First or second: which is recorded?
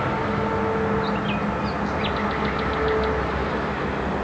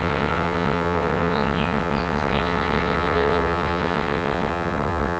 first